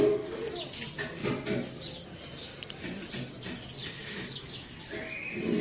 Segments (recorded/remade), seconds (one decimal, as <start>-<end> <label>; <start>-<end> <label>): 0.0-4.0 recorded; 4.0-4.6 remade; 4.6-5.6 recorded

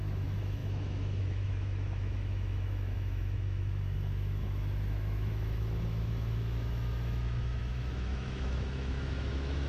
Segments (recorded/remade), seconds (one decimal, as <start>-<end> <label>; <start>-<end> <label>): 0.0-9.7 remade

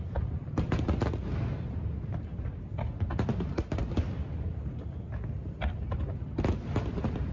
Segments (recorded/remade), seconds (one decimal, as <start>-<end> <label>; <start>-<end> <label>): 0.0-7.3 recorded

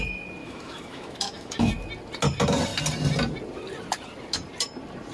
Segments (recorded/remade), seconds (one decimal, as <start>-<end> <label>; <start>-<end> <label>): 0.0-0.4 recorded; 0.4-1.7 remade; 1.7-5.1 recorded